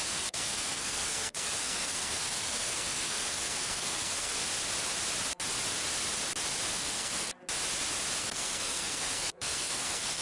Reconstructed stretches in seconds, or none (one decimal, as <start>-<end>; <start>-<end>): 0.0-4.4; 6.7-7.3; 8.2-10.2